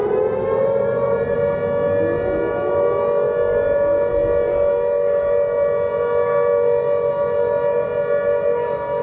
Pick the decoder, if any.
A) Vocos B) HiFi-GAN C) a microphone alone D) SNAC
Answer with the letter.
C